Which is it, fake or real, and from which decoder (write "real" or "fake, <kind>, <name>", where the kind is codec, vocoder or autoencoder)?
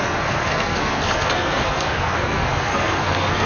fake, codec, SNAC